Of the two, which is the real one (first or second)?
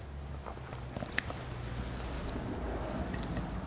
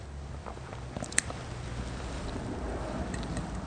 first